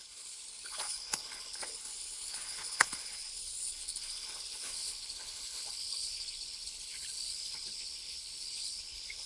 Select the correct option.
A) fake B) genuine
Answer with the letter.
A